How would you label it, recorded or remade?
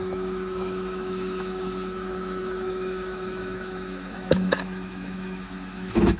remade